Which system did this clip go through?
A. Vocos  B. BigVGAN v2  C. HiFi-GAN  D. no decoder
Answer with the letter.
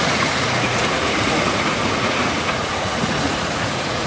A